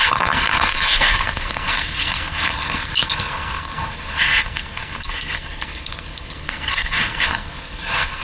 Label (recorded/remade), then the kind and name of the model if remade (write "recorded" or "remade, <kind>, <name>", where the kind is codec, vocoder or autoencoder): remade, codec, SNAC